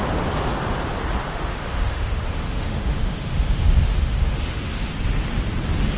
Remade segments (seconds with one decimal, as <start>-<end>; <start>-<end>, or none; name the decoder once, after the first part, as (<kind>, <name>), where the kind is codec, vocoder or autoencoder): 1.3-4.9 (autoencoder, DAC-VAE)